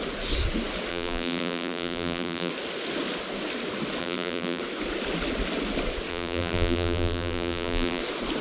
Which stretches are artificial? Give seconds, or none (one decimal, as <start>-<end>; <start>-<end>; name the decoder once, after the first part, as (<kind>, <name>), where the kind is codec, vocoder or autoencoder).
0.9-2.5 (vocoder, BigVGAN v2); 4.0-4.6; 6.1-8.0